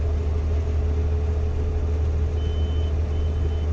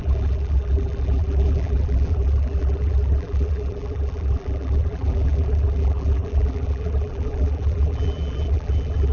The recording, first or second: first